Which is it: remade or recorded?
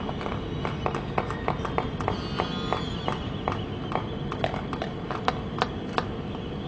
recorded